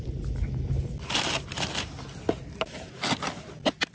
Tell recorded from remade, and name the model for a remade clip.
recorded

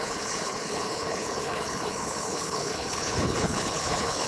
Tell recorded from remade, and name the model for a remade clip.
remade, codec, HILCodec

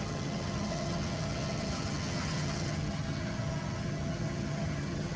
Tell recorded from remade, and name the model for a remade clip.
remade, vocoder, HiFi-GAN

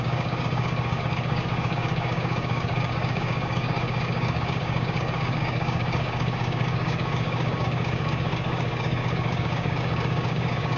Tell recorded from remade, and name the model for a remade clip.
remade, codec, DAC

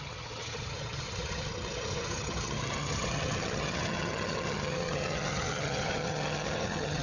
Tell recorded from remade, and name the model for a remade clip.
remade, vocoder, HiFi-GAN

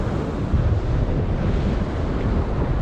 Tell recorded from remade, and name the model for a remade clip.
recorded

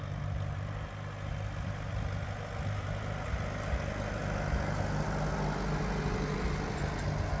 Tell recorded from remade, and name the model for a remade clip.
recorded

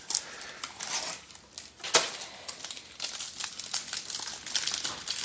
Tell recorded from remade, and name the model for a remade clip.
recorded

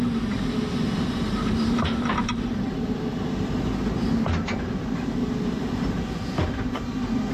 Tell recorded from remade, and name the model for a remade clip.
remade, vocoder, BigVGAN v2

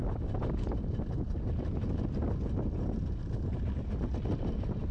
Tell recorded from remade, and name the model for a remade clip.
recorded